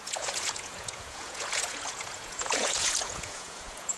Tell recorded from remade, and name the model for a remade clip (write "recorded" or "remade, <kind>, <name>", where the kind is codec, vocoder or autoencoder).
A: remade, vocoder, Vocos